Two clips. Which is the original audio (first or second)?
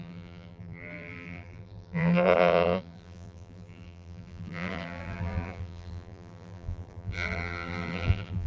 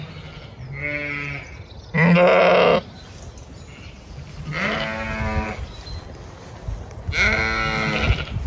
second